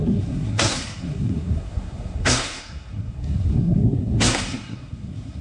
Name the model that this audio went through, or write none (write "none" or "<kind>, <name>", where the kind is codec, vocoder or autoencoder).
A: codec, SNAC